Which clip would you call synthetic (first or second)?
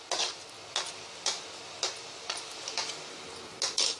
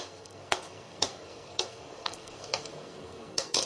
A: second